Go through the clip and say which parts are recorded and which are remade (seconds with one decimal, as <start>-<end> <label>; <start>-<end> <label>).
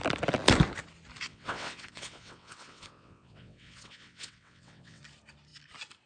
0.0-1.3 recorded; 1.3-5.0 remade; 5.0-6.1 recorded